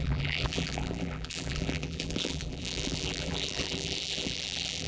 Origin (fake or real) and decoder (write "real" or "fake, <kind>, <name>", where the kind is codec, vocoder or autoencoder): fake, vocoder, BigVGAN v2